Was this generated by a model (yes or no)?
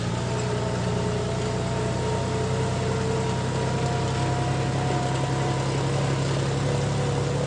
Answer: no